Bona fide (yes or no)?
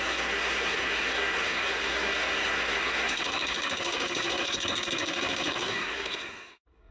no